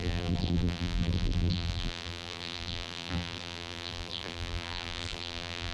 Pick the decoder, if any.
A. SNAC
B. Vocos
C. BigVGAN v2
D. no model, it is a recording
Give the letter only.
C